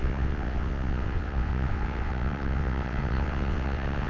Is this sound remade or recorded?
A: remade